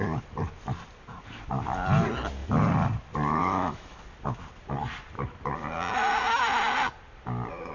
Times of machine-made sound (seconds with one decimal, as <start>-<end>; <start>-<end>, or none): 3.4-4.0